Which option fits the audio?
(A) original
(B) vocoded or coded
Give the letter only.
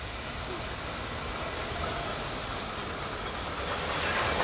A